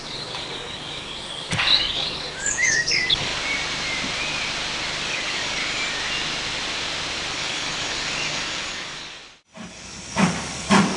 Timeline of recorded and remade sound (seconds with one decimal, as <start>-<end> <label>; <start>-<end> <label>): 0.0-3.3 remade; 3.3-5.0 recorded; 5.0-5.6 remade; 5.6-7.3 recorded; 7.3-9.2 remade; 9.2-9.7 recorded; 9.7-11.0 remade